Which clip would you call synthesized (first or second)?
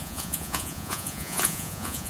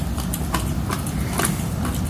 first